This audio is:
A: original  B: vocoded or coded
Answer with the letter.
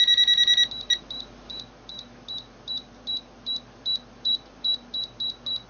B